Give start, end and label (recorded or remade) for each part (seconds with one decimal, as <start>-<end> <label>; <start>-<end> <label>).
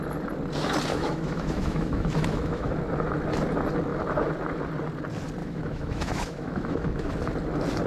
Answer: 0.0-0.9 recorded; 0.9-2.7 remade; 2.7-5.4 recorded; 5.4-7.1 remade; 7.1-7.9 recorded